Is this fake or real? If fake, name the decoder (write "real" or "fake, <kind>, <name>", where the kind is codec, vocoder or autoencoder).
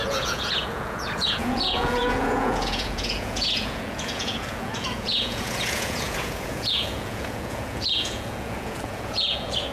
fake, vocoder, Vocos